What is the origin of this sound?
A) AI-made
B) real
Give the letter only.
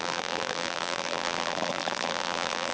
A